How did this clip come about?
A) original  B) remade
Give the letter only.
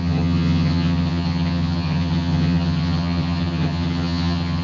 B